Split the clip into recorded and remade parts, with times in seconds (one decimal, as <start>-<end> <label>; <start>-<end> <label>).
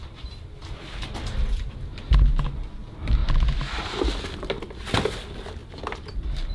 0.0-6.5 recorded